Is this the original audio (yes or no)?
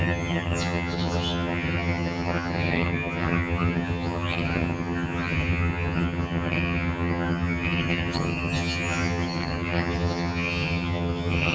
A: no